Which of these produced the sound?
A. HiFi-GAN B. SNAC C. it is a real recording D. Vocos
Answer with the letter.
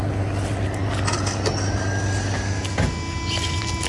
C